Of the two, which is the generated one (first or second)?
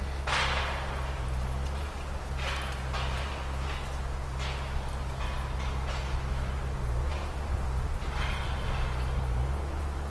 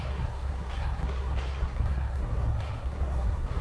second